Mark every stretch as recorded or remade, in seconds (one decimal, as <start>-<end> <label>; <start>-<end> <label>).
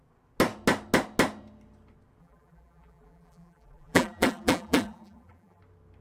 0.0-2.2 recorded; 2.2-5.6 remade; 5.6-6.0 recorded